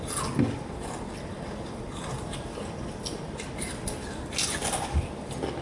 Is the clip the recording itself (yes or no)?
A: yes